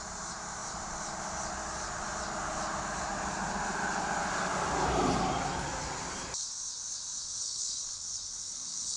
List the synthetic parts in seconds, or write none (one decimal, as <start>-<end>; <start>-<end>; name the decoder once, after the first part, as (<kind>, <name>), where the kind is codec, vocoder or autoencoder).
7.4-9.0 (codec, HILCodec)